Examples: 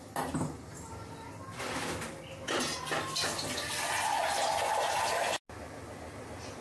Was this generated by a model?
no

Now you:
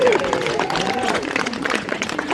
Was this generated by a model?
yes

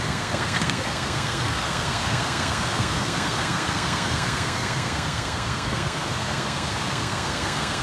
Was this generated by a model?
yes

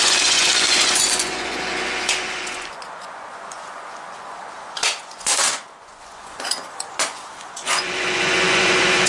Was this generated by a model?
yes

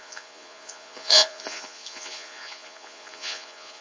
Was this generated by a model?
yes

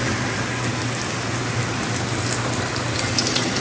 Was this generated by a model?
no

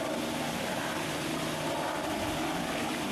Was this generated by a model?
no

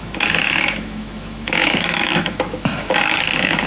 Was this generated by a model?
yes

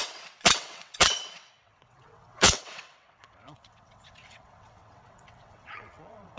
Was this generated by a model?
yes